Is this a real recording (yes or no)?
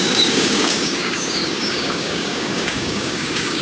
no